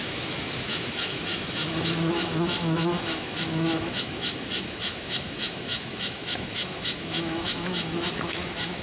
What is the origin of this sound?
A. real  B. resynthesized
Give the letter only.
B